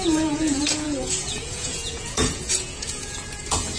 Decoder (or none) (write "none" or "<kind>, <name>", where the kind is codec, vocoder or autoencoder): vocoder, Vocos